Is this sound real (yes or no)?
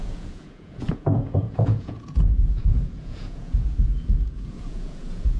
no